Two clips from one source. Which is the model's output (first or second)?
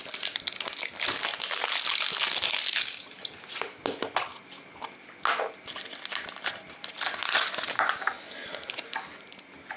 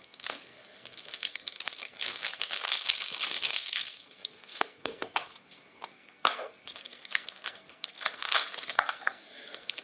second